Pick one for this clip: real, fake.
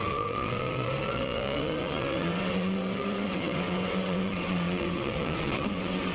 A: fake